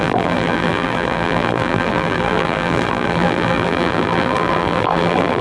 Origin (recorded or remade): remade